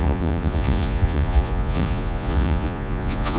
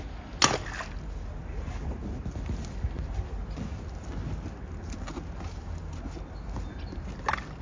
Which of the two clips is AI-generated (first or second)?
first